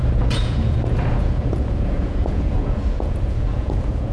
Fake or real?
fake